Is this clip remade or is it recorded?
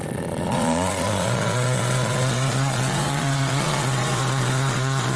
remade